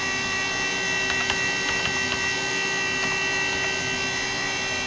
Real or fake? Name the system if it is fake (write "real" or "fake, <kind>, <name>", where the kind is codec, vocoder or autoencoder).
real